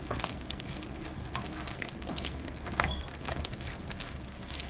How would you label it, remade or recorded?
remade